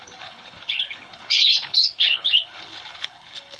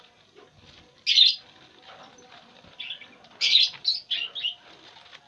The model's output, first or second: first